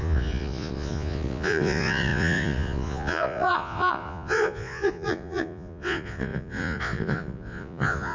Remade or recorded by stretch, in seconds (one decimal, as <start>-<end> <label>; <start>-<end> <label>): 0.0-8.1 remade